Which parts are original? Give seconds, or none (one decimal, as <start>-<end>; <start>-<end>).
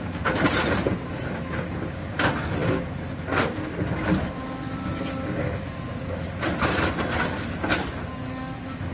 0.0-8.9